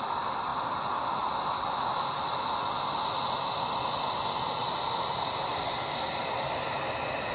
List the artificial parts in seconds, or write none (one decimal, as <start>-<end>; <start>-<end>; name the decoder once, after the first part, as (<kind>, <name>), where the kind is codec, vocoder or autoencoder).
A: 5.5-6.2 (vocoder, BigVGAN v2)